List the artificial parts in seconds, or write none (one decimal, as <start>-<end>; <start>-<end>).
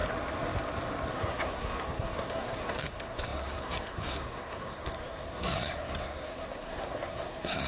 1.1-7.7